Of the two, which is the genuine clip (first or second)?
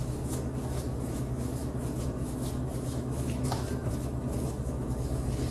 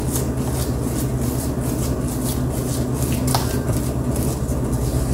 second